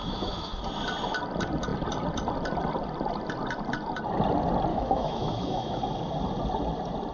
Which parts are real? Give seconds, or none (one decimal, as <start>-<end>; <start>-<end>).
0.6-4.7; 5.8-7.1